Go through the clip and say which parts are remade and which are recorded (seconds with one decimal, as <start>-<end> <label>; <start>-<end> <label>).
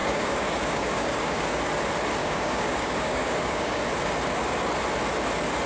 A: 0.0-1.6 remade; 1.6-2.2 recorded; 2.2-3.8 remade; 3.8-5.7 recorded